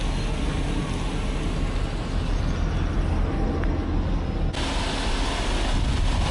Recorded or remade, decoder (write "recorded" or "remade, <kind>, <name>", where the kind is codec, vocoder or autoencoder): recorded